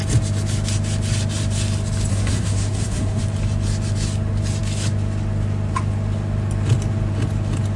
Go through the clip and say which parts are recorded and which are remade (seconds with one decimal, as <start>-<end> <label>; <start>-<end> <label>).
0.0-2.1 recorded; 2.1-3.2 remade; 3.2-7.8 recorded